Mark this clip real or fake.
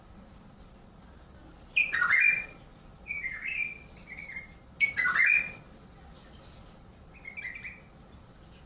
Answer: real